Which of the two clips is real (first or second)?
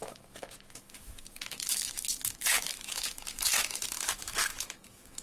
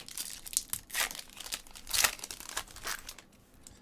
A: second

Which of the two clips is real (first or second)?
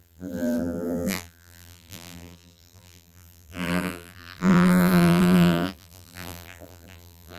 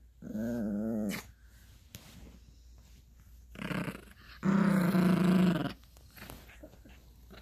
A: second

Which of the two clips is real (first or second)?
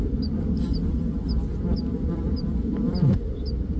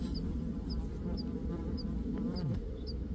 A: second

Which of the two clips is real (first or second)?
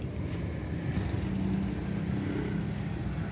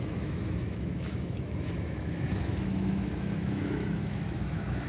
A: first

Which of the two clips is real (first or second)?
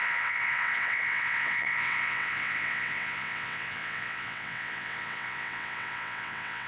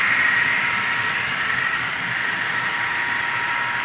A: second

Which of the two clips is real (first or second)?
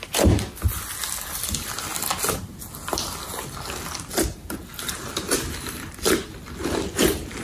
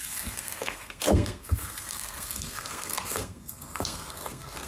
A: first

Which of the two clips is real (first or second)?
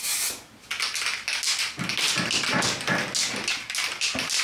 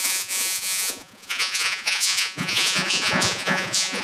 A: first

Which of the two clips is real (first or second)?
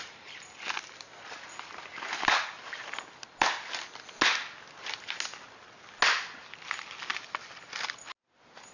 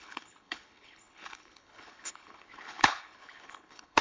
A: first